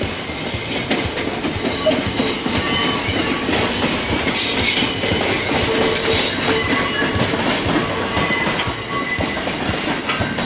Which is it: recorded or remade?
recorded